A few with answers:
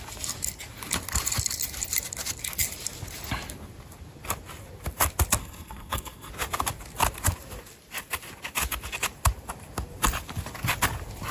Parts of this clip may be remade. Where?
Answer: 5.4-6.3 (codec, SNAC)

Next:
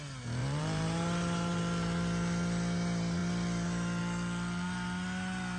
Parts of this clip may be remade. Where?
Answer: 0.4-1.6 (vocoder, BigVGAN v2)

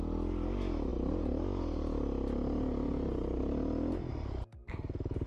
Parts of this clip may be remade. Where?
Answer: none

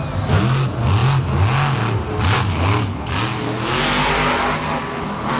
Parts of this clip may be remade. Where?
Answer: none

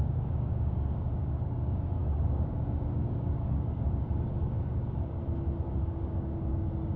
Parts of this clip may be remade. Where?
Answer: 0.0-5.2 (codec, DAC); 5.8-7.0

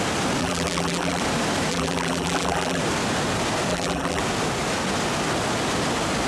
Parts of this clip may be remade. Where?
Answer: 0.4-1.2 (vocoder, BigVGAN v2); 1.7-2.8; 3.7-4.2